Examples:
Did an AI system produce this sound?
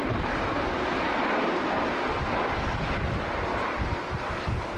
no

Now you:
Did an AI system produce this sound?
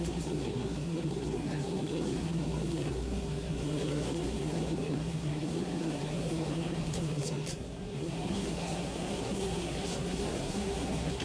yes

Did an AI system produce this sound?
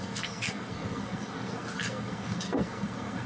yes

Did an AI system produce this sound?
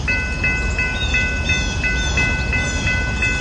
no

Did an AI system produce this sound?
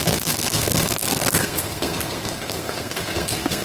yes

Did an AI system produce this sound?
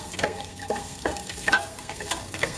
yes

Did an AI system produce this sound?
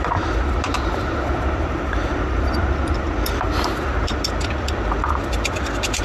no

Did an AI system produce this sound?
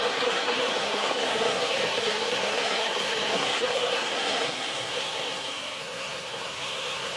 yes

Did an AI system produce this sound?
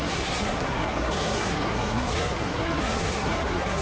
yes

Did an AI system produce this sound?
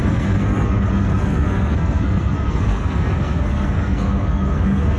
yes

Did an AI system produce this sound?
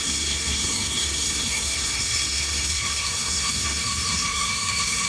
yes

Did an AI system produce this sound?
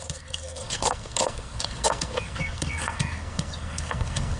yes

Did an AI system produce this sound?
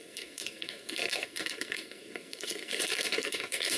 yes